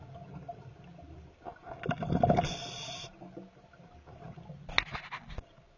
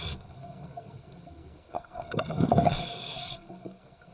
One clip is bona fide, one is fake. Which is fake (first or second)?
second